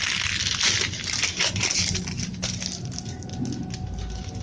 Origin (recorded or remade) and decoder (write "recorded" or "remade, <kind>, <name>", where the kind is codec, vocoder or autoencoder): recorded